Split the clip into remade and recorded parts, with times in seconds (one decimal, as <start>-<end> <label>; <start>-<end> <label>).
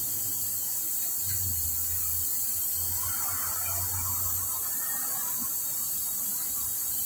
0.0-7.1 recorded